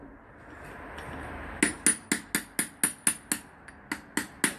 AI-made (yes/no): no